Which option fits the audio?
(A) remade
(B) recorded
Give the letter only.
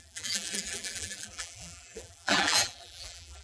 A